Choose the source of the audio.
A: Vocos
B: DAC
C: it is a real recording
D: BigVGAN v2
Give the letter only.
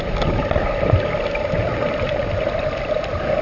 C